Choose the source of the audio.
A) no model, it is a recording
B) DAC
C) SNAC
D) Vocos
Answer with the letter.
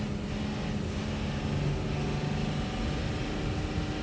A